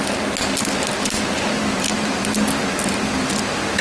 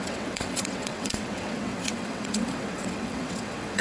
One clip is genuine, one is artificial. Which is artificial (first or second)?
second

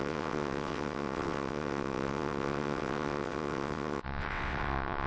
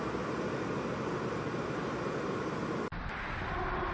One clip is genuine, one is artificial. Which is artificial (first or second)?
first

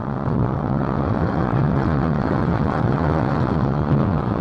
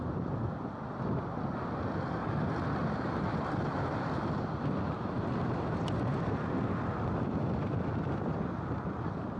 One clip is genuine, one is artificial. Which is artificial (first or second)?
first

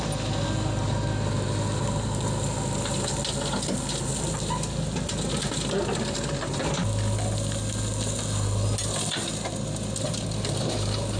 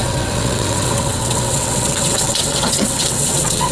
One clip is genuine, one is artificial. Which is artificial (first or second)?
second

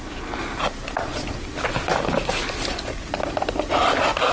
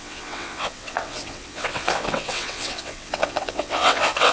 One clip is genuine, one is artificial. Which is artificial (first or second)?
second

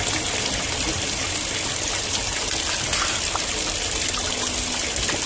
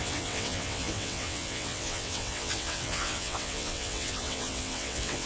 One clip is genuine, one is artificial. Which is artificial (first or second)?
second